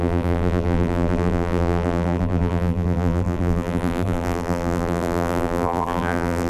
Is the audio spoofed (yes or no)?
yes